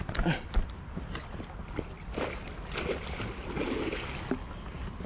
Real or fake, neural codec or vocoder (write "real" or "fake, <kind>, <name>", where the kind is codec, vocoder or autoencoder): real